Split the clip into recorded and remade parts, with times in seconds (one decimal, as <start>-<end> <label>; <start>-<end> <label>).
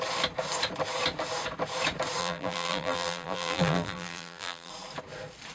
0.0-2.2 recorded; 2.2-4.7 remade; 4.7-5.5 recorded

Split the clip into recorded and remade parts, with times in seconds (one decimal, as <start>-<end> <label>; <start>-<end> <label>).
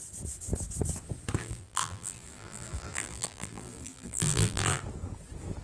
0.0-1.4 recorded; 1.4-4.8 remade; 4.8-5.6 recorded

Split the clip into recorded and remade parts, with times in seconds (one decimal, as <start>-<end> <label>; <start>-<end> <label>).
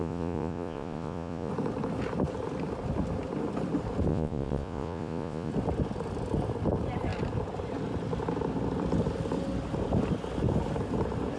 0.0-1.5 remade; 1.5-4.1 recorded; 4.1-5.5 remade; 5.5-11.4 recorded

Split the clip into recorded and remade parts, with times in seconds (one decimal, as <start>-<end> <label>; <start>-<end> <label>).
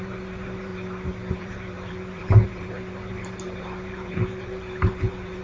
0.0-0.7 remade; 0.7-1.4 recorded; 1.4-5.4 remade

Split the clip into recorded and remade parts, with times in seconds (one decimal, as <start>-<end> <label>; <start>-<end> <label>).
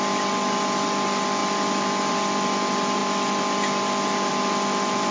0.0-1.4 recorded; 1.4-2.1 remade; 2.1-5.1 recorded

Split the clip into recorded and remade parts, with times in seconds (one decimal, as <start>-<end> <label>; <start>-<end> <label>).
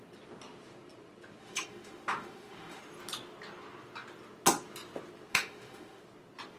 0.0-1.4 recorded; 1.4-2.8 remade; 2.8-5.3 recorded; 5.3-6.0 remade; 6.0-6.6 recorded